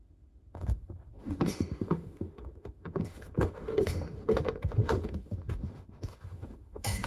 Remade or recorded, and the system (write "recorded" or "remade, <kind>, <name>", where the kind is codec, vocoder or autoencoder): remade, autoencoder, DAC-VAE